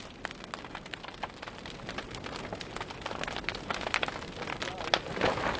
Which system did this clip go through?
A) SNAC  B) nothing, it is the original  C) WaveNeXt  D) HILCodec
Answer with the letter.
B